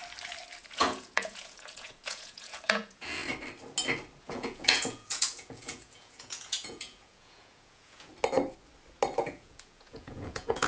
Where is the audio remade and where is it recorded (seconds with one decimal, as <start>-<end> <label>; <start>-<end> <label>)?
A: 0.0-0.6 recorded; 0.6-3.2 remade; 3.2-4.2 recorded; 4.2-8.1 remade; 8.1-9.2 recorded; 9.2-10.7 remade